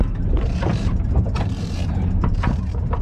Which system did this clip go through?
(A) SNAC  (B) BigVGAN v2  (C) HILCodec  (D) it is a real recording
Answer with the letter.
B